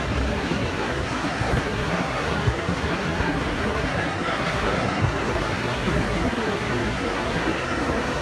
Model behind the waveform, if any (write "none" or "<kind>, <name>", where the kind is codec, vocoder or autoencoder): codec, SNAC